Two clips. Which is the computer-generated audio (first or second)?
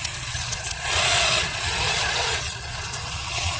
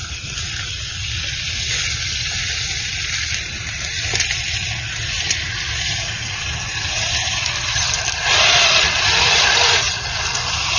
first